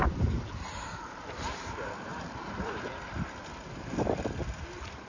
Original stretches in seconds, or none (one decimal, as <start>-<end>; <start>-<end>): 3.1-5.1